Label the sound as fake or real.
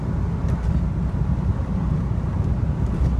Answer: real